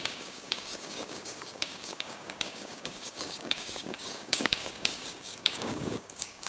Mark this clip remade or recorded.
remade